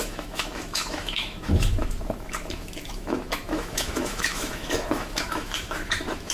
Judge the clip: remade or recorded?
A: remade